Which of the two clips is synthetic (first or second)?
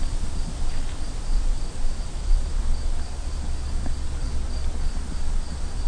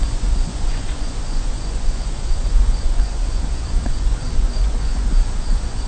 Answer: second